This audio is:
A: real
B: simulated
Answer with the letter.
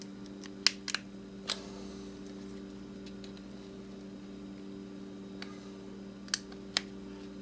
A